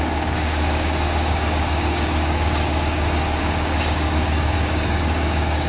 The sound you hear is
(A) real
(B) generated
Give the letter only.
B